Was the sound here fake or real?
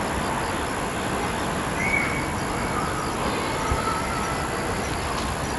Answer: real